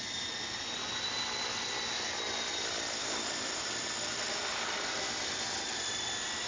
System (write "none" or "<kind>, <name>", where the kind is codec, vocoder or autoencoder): none